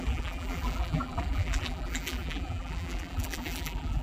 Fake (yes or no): yes